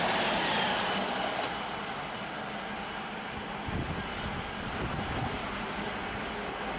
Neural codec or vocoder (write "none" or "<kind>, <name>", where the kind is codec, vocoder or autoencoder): none